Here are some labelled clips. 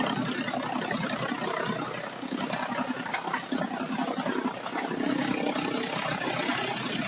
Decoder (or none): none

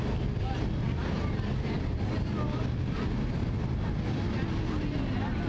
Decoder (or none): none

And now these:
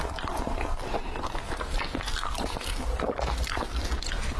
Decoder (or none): none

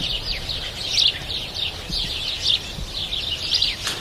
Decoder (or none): none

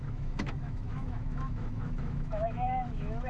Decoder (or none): autoencoder, DAC-VAE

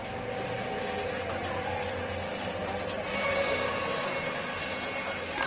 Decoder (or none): none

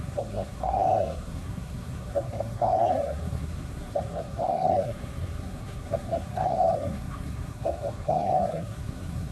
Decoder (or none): codec, SNAC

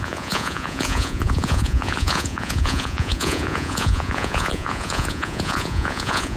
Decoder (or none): vocoder, Vocos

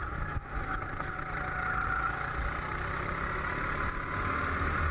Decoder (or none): none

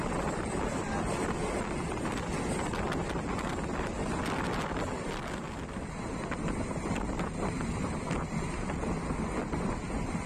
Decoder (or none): none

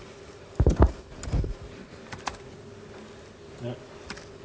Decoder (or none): none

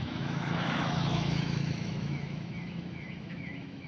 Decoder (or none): autoencoder, DAC-VAE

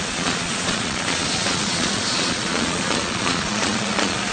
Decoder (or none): vocoder, Vocos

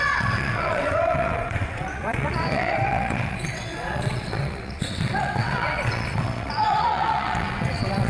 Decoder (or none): vocoder, WaveNeXt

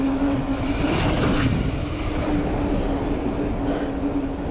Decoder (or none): none